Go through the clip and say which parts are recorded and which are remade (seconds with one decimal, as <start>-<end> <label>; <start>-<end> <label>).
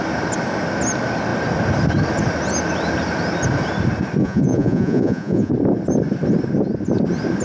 0.0-4.2 recorded; 4.2-5.5 remade; 5.5-7.4 recorded